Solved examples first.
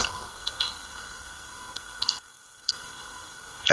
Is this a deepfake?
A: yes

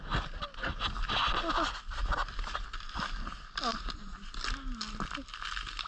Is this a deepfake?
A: no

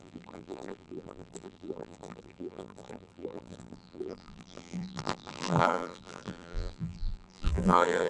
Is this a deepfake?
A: yes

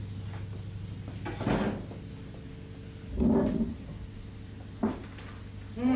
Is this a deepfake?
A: no